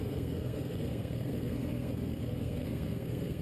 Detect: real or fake fake